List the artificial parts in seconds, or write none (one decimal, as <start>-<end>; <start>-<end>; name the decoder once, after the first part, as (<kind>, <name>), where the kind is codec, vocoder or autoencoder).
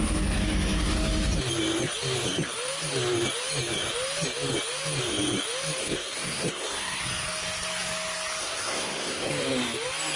5.8-7.0 (codec, SNAC); 8.4-9.3